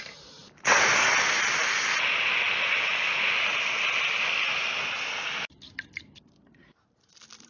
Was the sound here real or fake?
real